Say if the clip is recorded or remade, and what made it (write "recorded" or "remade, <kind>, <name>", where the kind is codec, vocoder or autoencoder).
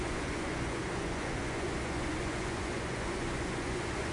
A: remade, vocoder, Vocos